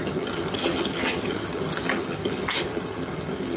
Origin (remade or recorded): remade